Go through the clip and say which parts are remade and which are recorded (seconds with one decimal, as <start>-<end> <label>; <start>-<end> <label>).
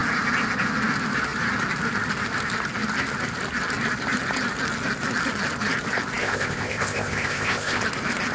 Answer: 0.0-6.2 recorded; 6.2-7.8 remade; 7.8-8.3 recorded